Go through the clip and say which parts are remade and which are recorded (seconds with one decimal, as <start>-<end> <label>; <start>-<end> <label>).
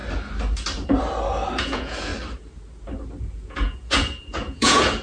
0.0-1.6 recorded; 1.6-2.1 remade; 2.1-3.3 recorded; 3.3-5.0 remade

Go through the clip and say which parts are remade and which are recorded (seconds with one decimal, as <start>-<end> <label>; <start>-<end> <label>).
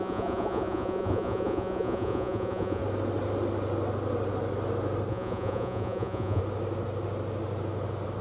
0.0-2.8 remade; 2.8-5.1 recorded; 5.1-6.4 remade; 6.4-8.2 recorded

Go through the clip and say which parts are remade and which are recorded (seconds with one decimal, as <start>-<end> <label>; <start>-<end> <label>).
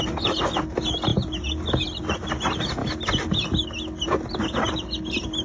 0.0-5.4 recorded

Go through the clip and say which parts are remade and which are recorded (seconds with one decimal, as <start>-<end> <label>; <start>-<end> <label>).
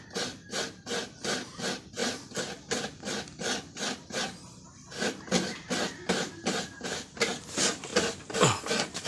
0.0-9.1 recorded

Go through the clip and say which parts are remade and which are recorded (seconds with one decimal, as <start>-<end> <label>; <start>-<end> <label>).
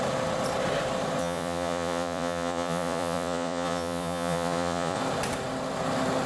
0.0-1.2 recorded; 1.2-5.0 remade; 5.0-6.3 recorded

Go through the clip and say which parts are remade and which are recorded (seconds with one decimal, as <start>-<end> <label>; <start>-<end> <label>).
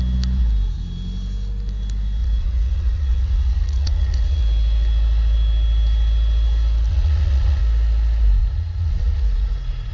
0.0-2.2 recorded; 2.2-4.4 remade; 4.4-6.9 recorded; 6.9-7.6 remade; 7.6-8.4 recorded; 8.4-9.9 remade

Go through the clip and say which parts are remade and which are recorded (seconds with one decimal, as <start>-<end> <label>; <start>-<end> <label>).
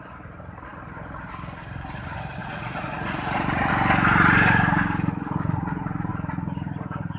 0.0-2.4 recorded; 2.4-3.7 remade; 3.7-7.2 recorded